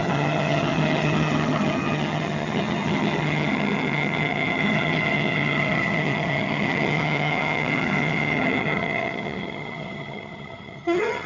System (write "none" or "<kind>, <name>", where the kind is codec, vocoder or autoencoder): vocoder, HiFi-GAN